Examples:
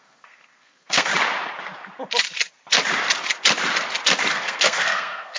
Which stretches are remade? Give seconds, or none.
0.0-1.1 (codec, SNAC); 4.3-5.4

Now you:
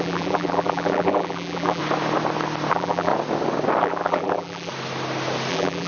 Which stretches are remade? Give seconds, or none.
0.0-1.8 (vocoder, BigVGAN v2); 2.7-3.1; 3.8-4.7; 5.5-5.9

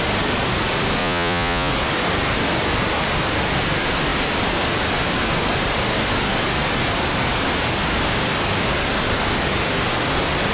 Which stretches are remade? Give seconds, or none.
1.0-1.7 (vocoder, Vocos)

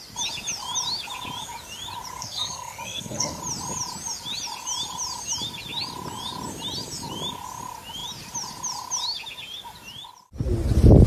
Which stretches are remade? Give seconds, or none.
2.2-3.4 (codec, SNAC)

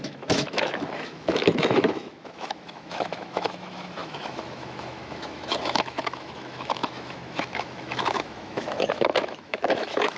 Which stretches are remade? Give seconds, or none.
0.0-10.2 (autoencoder, DAC-VAE)

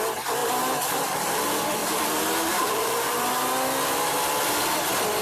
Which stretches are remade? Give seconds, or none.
0.4-1.4 (vocoder, BigVGAN v2); 1.8-2.9

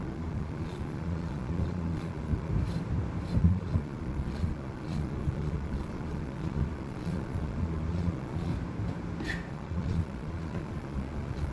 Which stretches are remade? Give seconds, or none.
0.0-2.5 (vocoder, Vocos); 3.4-8.5; 9.5-11.5

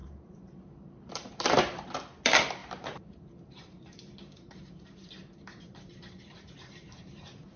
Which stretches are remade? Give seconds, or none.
0.0-1.9 (vocoder, BigVGAN v2); 2.6-7.6